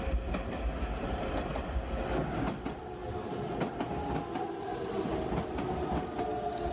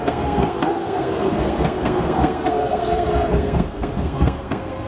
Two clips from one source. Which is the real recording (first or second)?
first